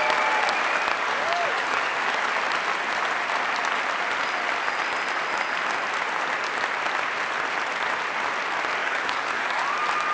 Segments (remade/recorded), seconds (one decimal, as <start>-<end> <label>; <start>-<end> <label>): 0.0-0.9 recorded; 0.9-2.3 remade; 2.3-8.8 recorded; 8.8-9.6 remade; 9.6-10.1 recorded